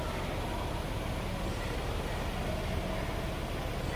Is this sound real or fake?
real